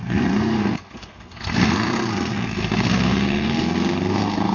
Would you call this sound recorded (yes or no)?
no